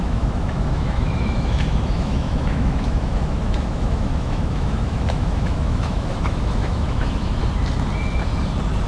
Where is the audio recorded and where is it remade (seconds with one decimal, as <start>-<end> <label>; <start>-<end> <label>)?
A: 0.0-7.4 remade; 7.4-8.9 recorded